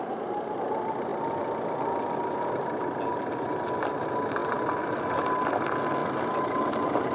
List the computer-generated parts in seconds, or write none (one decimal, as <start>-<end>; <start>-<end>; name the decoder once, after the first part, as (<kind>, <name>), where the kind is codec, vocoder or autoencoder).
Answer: 6.0-7.1 (vocoder, BigVGAN v2)